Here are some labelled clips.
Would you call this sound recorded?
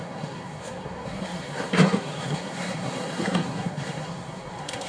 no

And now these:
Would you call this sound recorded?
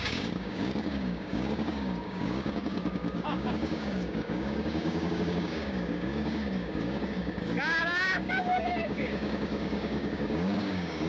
no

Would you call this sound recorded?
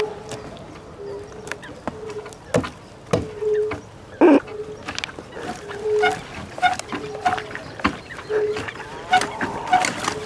yes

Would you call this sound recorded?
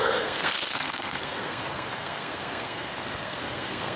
no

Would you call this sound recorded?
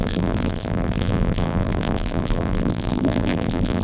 no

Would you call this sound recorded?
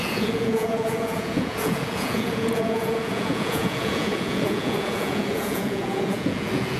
no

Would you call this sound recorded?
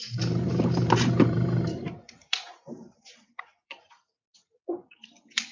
no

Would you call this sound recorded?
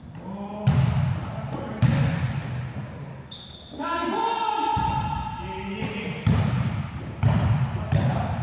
yes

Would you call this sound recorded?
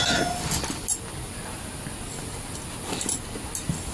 yes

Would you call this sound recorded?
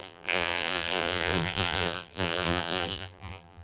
no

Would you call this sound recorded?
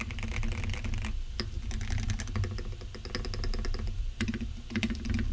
yes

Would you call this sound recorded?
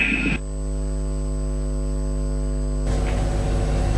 yes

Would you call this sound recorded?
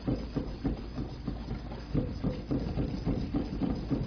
yes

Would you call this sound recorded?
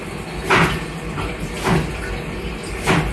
yes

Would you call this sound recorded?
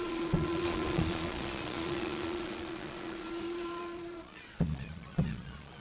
no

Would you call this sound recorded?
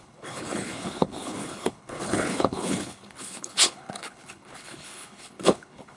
no